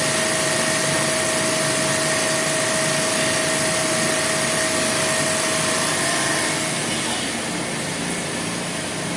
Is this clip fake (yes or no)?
no